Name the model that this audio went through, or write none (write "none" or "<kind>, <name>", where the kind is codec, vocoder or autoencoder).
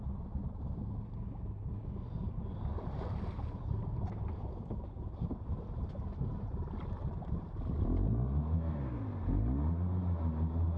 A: none